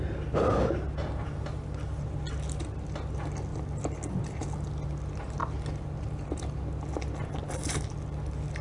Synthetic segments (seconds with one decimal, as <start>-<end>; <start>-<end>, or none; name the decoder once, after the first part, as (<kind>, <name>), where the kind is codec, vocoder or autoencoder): none